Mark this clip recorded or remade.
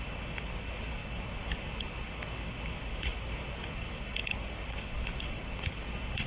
remade